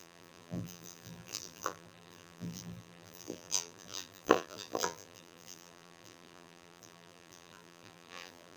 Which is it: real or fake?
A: fake